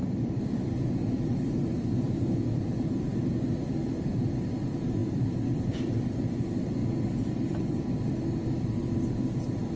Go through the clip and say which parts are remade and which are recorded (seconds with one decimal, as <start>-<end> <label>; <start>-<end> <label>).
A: 0.0-3.1 remade; 3.1-3.6 recorded; 3.6-6.8 remade; 6.8-7.3 recorded; 7.3-9.8 remade